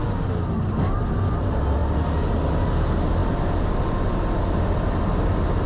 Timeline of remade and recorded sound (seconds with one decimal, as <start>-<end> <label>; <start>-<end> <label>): 0.0-5.7 recorded